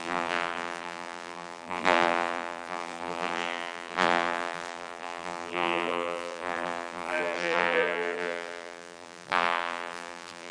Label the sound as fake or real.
fake